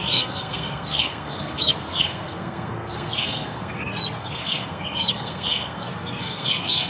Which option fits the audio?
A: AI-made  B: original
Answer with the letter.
A